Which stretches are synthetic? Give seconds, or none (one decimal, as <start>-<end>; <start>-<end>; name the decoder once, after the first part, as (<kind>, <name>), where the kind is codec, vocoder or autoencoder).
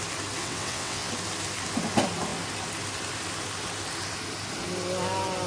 0.4-1.1 (vocoder, WaveNeXt)